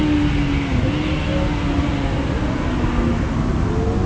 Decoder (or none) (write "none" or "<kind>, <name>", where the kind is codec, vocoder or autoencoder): none